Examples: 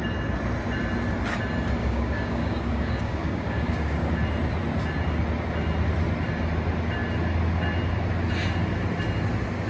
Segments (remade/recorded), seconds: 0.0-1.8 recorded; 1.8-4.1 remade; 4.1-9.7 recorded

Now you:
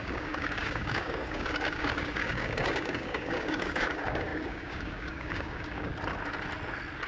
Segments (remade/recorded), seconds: 0.0-5.9 remade; 5.9-7.1 recorded

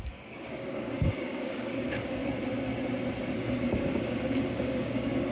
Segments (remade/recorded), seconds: 0.0-2.2 remade; 2.2-3.2 recorded; 3.2-5.3 remade

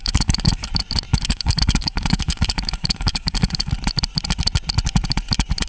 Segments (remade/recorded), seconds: 0.0-0.7 remade; 0.7-1.1 recorded; 1.1-3.7 remade; 3.7-5.7 recorded

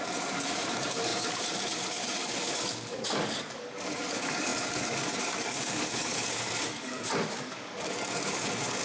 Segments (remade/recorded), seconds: 0.0-8.8 remade

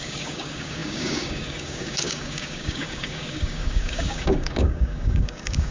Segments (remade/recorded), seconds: 0.0-5.7 remade